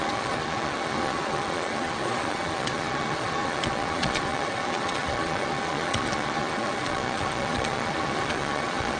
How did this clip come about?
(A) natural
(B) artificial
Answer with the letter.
B